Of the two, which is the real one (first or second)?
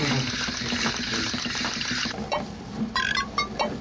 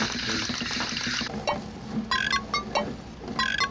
second